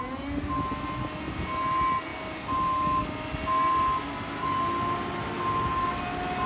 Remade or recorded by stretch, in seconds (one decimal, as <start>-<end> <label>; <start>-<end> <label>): 0.0-6.5 recorded